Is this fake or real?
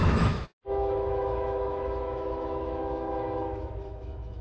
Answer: fake